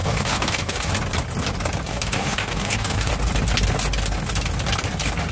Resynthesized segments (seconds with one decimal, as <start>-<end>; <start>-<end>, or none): 0.0-0.9; 1.9-3.1